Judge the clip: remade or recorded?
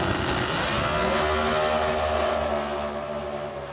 recorded